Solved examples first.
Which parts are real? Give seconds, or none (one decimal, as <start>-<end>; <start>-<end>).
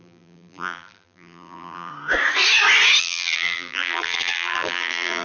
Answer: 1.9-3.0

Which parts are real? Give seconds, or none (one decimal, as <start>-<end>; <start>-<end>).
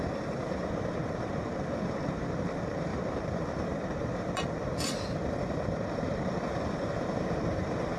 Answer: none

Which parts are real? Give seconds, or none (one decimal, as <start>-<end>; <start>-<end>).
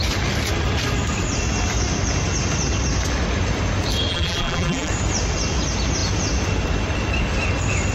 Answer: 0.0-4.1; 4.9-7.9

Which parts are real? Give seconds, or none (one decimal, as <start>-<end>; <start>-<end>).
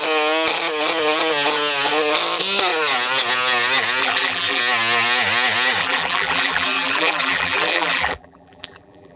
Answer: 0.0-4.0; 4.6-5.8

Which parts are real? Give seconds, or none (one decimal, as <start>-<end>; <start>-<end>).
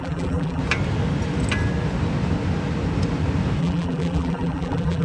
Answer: 0.6-3.6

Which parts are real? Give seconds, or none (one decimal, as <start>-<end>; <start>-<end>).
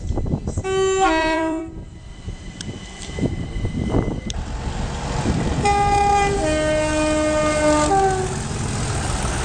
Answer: 0.0-1.2; 4.4-9.4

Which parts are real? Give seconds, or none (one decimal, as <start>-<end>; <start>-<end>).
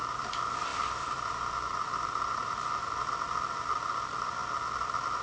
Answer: 0.0-0.7; 2.4-5.2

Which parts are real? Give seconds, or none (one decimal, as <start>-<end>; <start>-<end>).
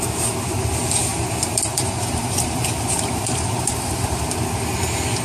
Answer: 0.0-1.1; 4.2-5.2